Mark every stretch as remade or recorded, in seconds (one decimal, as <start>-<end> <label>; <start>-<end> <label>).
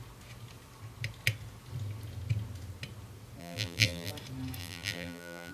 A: 0.0-3.4 recorded; 3.4-4.1 remade; 4.1-4.6 recorded; 4.6-5.5 remade